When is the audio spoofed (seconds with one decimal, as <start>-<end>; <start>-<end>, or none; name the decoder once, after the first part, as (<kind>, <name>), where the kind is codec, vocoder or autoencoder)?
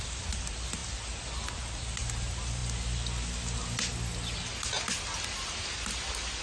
none